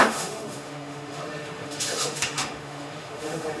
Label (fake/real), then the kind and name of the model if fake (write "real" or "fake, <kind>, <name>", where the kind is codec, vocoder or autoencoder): fake, autoencoder, DAC-VAE